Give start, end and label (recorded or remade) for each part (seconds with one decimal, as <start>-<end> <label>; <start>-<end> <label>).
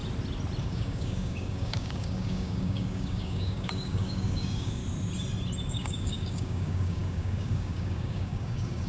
0.0-0.6 recorded; 0.6-4.8 remade; 4.8-5.7 recorded; 5.7-8.9 remade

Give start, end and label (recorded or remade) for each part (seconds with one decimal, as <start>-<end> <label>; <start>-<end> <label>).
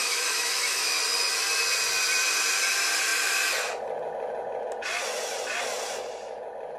0.0-1.0 remade; 1.0-6.8 recorded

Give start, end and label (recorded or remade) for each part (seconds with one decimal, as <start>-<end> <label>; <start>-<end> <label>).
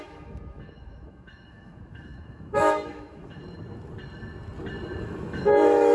0.0-3.4 remade; 3.4-5.0 recorded; 5.0-5.9 remade